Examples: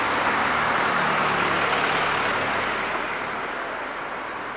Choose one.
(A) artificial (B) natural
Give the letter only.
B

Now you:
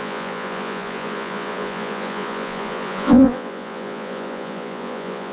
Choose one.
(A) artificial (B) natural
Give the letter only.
A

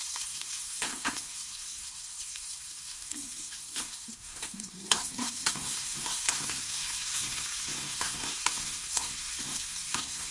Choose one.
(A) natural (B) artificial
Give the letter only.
B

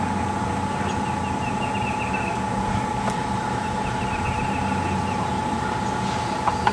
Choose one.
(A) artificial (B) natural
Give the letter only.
B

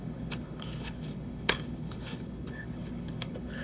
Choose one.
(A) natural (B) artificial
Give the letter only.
B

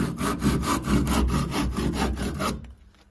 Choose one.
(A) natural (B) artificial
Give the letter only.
A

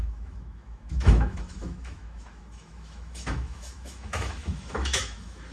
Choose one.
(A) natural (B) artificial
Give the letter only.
B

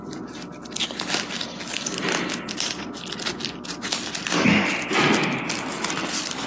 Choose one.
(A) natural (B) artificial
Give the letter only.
A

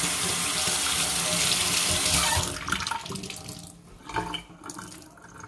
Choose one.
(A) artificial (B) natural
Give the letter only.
B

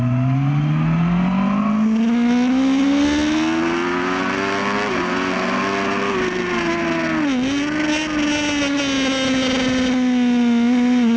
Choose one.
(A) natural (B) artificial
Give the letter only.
A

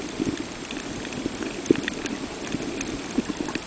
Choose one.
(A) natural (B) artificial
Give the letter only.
A